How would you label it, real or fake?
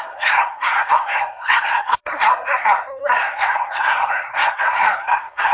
fake